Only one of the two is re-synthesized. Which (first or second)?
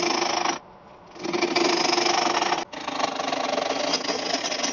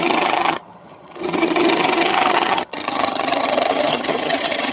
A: second